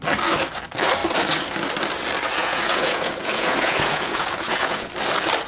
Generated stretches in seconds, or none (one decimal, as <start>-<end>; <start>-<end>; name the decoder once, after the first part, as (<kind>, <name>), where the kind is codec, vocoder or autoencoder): 2.4-4.9 (vocoder, Vocos)